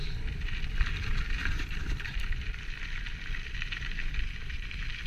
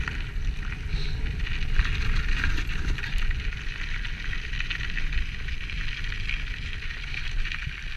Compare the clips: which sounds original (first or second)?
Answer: second